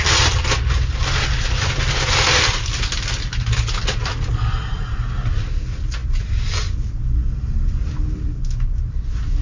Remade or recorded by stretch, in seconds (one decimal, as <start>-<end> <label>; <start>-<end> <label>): 0.0-9.4 recorded